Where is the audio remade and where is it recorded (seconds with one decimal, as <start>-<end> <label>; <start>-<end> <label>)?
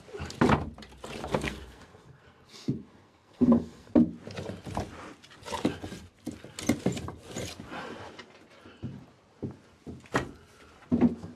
0.0-1.2 recorded; 1.2-3.9 remade; 3.9-11.4 recorded